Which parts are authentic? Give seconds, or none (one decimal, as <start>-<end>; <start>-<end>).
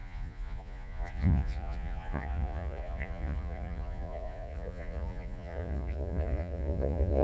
none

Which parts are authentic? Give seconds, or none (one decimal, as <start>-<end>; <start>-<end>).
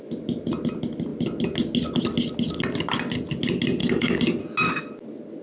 0.0-3.8; 4.4-5.4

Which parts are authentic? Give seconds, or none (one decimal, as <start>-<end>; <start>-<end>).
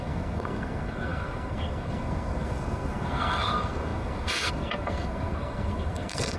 none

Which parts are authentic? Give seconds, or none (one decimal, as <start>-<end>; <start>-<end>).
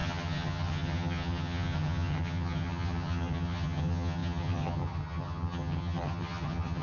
none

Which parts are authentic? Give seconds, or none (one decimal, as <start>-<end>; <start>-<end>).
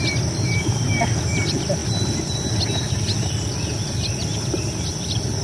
1.8-2.7; 3.1-3.7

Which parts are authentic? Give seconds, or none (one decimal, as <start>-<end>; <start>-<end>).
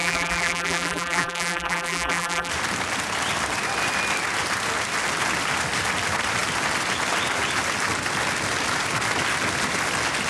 2.5-10.3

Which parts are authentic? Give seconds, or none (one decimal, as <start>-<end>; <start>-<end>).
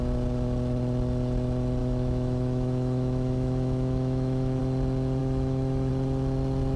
0.0-1.8; 4.6-5.2; 5.9-6.8